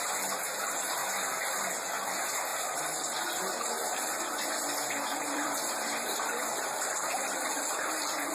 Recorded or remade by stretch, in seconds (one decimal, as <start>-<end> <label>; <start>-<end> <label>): 0.0-2.5 recorded; 2.5-7.5 remade; 7.5-8.3 recorded